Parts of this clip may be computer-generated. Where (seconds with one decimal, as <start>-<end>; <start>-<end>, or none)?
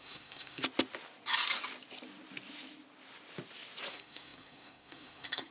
0.0-0.6; 3.9-5.5